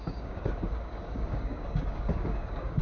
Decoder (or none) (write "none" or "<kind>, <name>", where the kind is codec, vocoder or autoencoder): codec, DAC